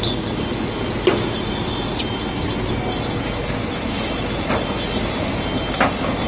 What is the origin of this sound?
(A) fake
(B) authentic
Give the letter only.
B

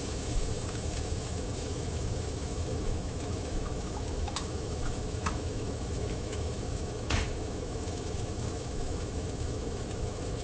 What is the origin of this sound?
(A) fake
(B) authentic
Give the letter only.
A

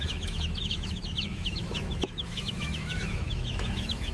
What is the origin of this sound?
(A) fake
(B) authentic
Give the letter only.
A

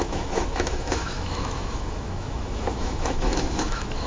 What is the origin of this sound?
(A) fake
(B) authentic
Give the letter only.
A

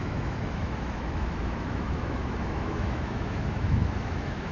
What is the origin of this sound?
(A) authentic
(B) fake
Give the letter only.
B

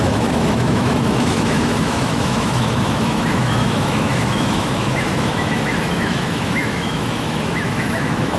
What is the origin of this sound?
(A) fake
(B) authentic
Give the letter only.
A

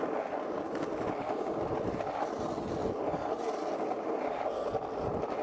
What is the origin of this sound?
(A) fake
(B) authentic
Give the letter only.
B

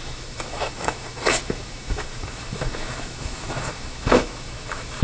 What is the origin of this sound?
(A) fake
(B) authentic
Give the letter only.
A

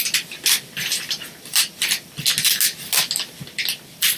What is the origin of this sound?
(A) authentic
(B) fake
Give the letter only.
A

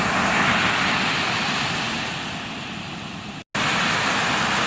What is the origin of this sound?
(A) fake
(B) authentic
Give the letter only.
B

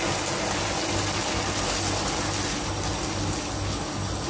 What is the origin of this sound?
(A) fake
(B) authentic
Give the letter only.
B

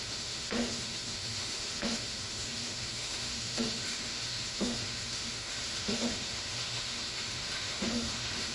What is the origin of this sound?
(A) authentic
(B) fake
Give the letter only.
B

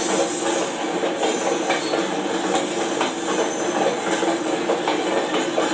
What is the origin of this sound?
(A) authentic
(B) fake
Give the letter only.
A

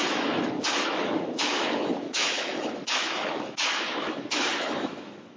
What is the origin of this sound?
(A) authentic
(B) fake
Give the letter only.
B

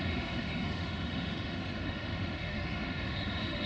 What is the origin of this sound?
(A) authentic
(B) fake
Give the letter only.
B